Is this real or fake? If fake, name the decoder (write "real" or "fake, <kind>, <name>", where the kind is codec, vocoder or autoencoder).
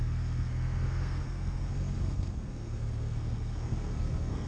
fake, codec, SNAC